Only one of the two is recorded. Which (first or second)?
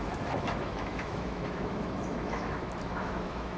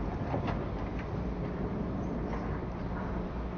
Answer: second